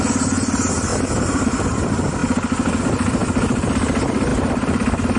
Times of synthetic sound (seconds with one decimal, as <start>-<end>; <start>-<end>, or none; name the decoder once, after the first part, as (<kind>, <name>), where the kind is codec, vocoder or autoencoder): 0.9-1.6 (vocoder, BigVGAN v2); 4.3-5.2